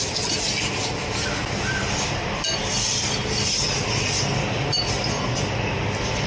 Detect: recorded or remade recorded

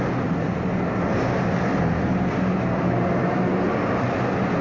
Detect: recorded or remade recorded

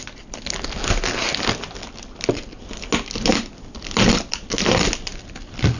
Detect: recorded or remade recorded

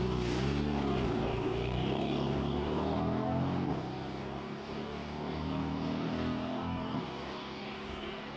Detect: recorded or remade remade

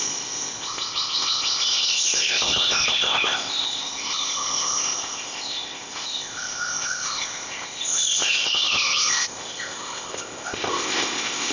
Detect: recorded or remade remade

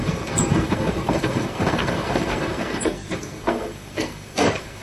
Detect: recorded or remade remade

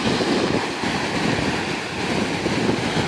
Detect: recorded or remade recorded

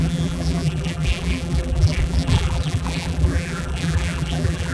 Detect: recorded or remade remade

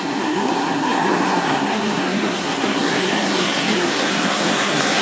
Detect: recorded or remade remade